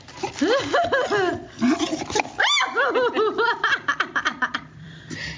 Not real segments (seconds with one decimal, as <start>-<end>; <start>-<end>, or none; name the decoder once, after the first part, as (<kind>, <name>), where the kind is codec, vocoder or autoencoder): 3.9-5.4 (vocoder, BigVGAN v2)